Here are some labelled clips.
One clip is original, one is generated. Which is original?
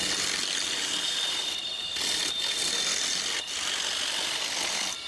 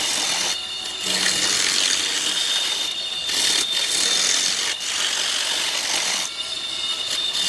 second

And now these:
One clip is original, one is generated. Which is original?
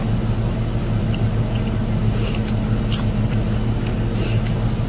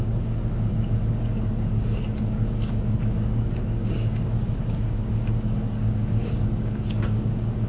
first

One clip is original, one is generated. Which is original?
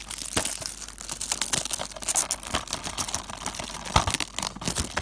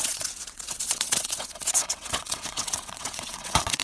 first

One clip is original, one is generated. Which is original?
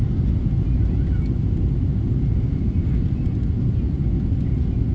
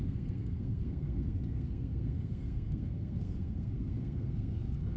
first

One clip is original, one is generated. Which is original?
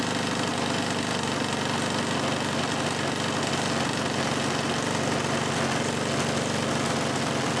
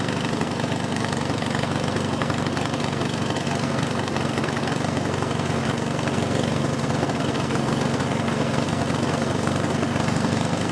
first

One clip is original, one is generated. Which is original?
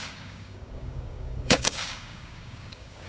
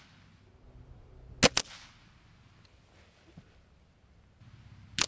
second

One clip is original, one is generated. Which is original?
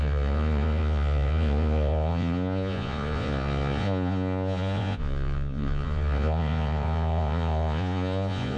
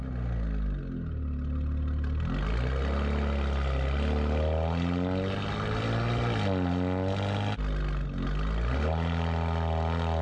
second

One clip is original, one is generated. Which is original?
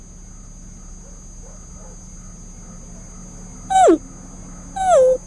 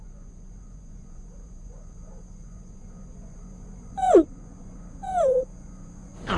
first